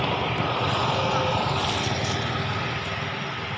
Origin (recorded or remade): recorded